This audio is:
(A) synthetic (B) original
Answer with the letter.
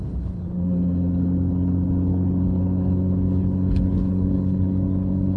A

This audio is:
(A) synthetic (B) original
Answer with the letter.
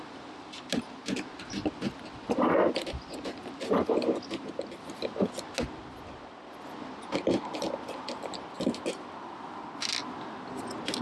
B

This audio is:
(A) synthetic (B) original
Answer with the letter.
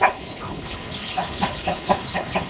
A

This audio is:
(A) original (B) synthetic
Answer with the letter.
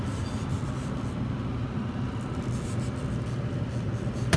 A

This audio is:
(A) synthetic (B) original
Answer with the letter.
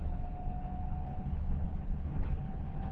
A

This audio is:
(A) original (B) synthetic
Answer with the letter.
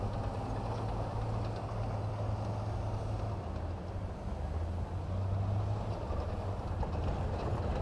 A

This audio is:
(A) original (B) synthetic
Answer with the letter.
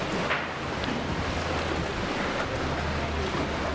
A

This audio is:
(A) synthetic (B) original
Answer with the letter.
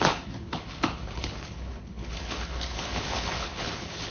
A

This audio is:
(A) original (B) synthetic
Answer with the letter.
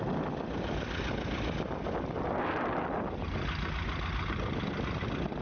A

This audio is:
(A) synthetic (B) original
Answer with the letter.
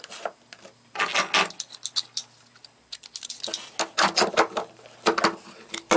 B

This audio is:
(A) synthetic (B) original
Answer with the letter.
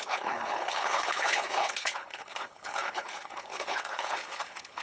A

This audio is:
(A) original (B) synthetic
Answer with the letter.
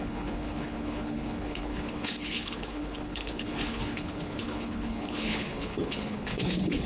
B